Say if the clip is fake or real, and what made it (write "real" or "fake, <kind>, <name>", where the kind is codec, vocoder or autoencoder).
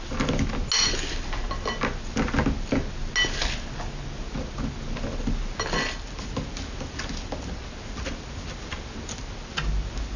real